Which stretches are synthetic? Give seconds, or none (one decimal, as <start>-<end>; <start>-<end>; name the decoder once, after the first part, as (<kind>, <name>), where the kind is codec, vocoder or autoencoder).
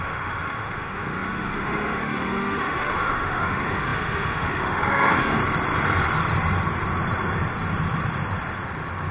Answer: 0.0-5.4 (autoencoder, DAC-VAE)